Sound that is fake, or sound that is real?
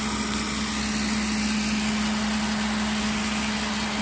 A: real